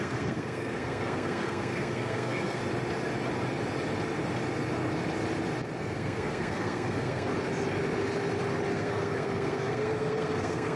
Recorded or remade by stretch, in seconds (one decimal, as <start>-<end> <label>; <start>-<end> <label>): 0.0-2.6 remade; 2.6-5.8 recorded; 5.8-7.3 remade; 7.3-8.7 recorded; 8.7-10.8 remade